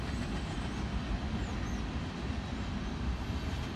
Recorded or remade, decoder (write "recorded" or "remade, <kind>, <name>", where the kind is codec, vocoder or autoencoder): recorded